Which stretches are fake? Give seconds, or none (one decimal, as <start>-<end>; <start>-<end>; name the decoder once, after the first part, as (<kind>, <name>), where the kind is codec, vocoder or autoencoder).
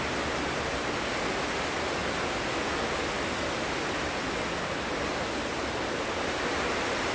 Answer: none